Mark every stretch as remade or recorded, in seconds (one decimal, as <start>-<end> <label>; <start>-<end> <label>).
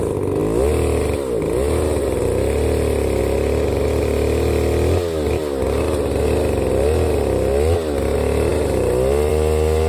0.0-9.9 recorded